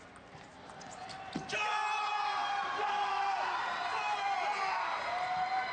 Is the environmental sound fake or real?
real